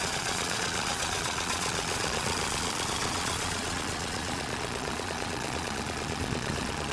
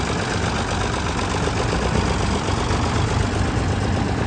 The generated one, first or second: first